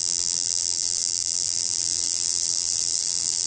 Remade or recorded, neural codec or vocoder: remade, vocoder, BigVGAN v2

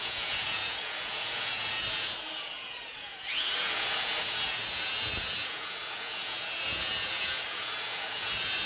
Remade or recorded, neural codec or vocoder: remade, vocoder, Vocos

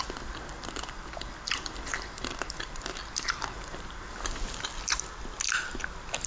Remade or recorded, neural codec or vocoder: recorded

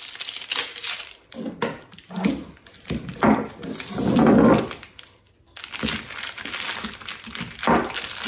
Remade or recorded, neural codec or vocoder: recorded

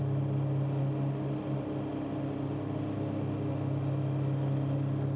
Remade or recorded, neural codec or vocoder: recorded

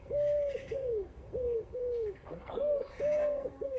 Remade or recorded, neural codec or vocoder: remade, codec, SNAC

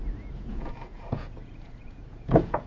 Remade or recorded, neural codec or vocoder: remade, vocoder, Vocos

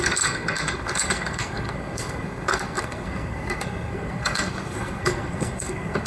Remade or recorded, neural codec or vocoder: remade, codec, SNAC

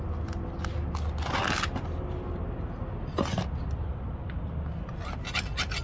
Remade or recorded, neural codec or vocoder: recorded